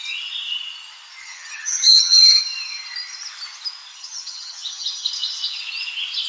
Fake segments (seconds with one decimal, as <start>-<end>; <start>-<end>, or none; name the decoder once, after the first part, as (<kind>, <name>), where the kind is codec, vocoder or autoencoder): 1.2-2.4 (vocoder, HiFi-GAN); 3.9-5.1